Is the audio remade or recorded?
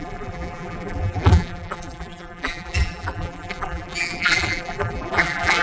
remade